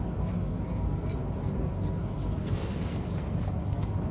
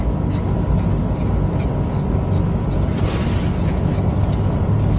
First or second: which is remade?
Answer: first